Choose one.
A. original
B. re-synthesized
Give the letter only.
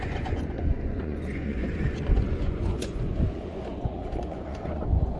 B